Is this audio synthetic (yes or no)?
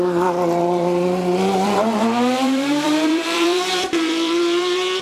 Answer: yes